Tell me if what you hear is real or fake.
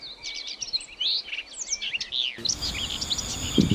real